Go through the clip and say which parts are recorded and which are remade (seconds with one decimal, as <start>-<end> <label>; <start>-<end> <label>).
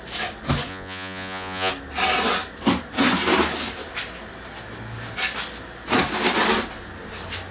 0.0-0.7 recorded; 0.7-1.7 remade; 1.7-7.5 recorded